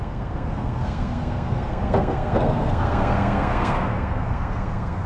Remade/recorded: remade